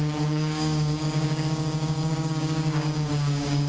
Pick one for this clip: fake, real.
fake